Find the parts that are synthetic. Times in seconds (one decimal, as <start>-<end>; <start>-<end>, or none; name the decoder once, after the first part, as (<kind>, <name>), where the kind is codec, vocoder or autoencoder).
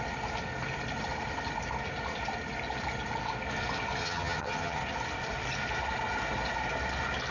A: 4.0-4.8 (vocoder, HiFi-GAN)